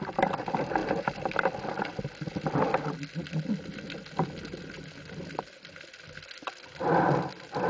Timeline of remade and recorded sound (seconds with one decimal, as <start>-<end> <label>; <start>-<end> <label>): 0.0-7.7 recorded